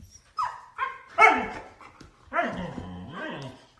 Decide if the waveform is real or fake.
real